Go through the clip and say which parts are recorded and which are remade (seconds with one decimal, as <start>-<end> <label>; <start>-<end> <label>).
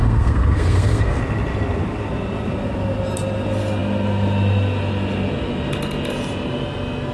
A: 0.0-1.2 remade; 1.2-7.1 recorded